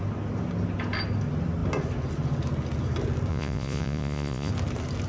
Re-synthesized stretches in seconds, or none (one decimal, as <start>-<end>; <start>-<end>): 3.3-4.5